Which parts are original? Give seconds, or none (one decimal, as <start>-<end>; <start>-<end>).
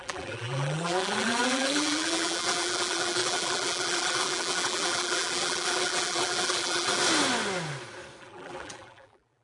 7.0-8.2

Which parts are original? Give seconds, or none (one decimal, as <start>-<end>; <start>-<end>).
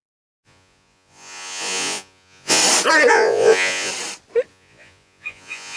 2.6-3.1; 3.9-4.5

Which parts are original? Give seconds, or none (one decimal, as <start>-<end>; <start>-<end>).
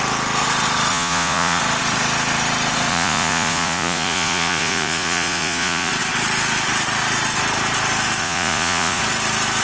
0.0-0.9; 1.6-2.9; 5.9-8.2; 9.0-9.6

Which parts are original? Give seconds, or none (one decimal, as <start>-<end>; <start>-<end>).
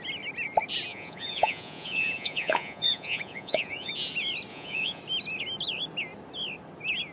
0.0-0.9; 3.9-4.5; 5.0-7.1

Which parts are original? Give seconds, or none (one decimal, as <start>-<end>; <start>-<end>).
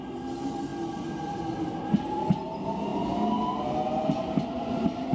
0.0-0.7; 1.9-5.1